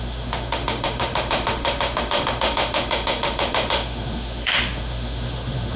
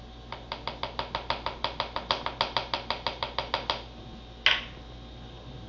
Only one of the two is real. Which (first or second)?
second